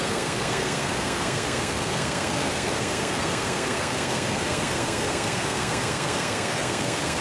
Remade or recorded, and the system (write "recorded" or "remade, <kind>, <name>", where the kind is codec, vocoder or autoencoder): remade, codec, SNAC